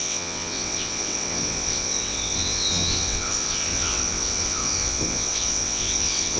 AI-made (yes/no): yes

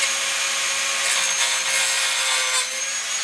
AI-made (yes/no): no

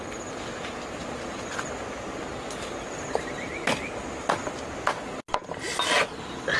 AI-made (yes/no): no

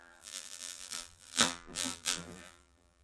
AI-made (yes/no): yes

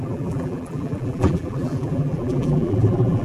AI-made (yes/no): yes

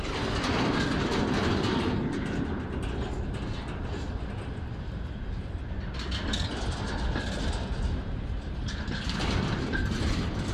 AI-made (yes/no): no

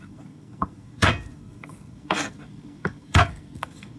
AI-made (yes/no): yes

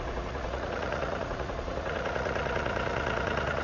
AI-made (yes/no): yes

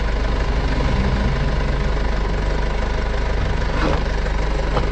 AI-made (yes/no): no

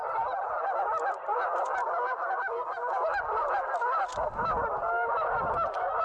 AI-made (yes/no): no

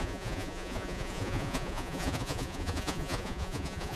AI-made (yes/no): yes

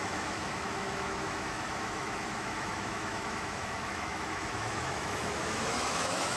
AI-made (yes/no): yes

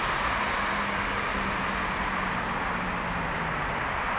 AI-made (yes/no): no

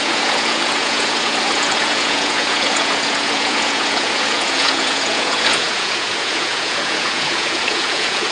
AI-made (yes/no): yes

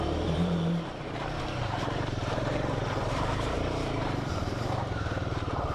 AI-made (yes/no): yes